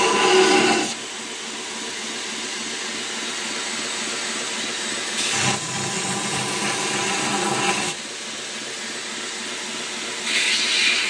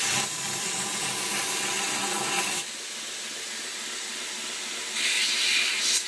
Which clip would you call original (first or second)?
first